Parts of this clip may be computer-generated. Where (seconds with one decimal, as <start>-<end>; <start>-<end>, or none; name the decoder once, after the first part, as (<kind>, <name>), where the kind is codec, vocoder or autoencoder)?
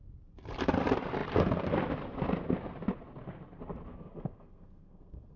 3.9-5.4 (codec, SNAC)